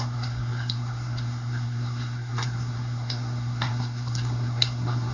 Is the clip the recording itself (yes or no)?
no